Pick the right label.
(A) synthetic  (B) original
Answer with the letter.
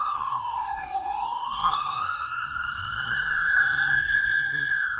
A